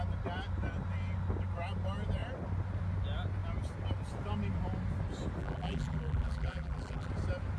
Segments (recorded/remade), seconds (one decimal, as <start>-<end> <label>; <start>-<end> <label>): 0.0-5.4 recorded; 5.4-7.1 remade; 7.1-7.6 recorded